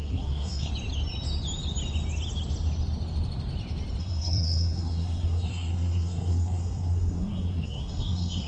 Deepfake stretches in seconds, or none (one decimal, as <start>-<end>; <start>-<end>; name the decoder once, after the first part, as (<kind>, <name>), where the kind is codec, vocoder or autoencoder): 0.0-0.7 (codec, SNAC); 4.0-8.5

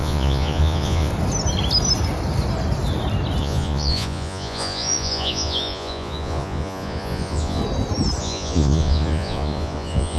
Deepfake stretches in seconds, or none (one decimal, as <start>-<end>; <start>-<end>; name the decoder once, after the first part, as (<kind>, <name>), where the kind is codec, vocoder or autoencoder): 0.0-1.1 (vocoder, Vocos); 3.4-7.6; 8.2-10.2

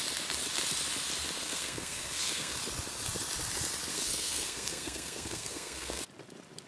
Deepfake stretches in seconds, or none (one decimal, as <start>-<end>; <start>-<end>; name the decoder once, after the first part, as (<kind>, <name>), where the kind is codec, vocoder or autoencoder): 1.4-2.6 (codec, SNAC); 3.9-6.0

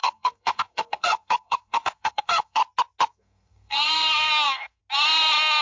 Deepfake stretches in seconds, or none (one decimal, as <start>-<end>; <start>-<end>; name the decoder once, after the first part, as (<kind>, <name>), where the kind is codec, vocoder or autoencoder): 0.0-2.6 (codec, SNAC); 3.1-4.8